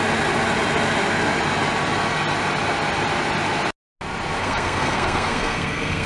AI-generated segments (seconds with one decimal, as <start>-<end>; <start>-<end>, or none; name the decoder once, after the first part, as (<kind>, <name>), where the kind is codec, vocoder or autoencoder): 4.4-6.1 (codec, SNAC)